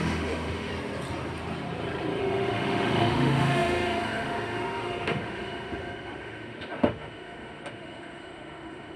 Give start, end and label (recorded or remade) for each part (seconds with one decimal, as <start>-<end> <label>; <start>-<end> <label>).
0.0-0.7 remade; 0.7-2.2 recorded; 2.2-9.0 remade

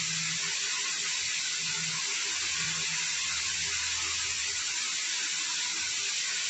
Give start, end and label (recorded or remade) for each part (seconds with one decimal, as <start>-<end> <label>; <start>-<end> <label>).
0.0-6.5 recorded